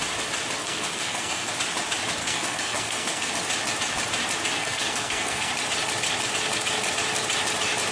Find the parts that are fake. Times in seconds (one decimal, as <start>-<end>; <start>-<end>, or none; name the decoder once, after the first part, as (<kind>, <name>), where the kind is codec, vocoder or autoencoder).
0.6-1.5 (codec, SNAC); 2.2-3.3; 4.6-5.5